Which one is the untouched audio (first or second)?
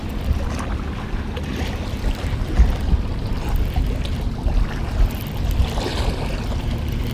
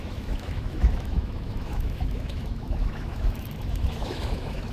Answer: first